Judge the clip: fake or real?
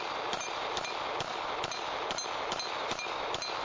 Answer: real